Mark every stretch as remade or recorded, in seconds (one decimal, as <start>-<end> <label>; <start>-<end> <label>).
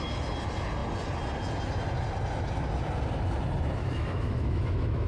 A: 0.0-3.8 recorded; 3.8-5.1 remade